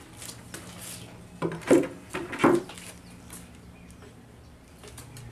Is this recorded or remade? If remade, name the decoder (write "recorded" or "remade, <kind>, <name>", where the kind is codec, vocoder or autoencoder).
recorded